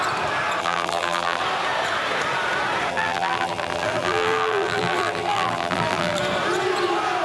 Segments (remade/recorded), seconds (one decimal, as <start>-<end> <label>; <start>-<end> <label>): 0.0-0.6 recorded; 0.6-1.4 remade; 1.4-2.9 recorded; 2.9-6.2 remade; 6.2-7.2 recorded